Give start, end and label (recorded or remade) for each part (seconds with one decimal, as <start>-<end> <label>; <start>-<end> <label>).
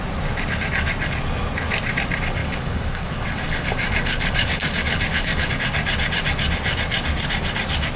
0.0-2.4 recorded; 2.4-5.5 remade; 5.5-8.0 recorded